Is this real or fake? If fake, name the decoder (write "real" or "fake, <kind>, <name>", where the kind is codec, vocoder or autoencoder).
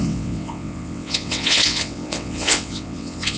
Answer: fake, vocoder, WaveNeXt